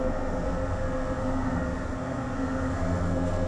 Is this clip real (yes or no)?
no